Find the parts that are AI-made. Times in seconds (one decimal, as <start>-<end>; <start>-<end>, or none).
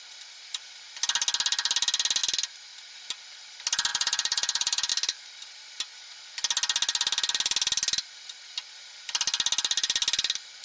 3.9-4.9